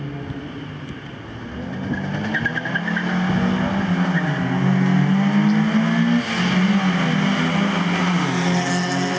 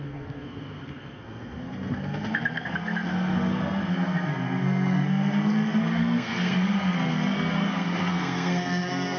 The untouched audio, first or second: first